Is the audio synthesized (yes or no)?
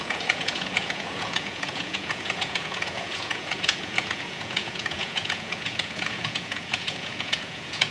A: yes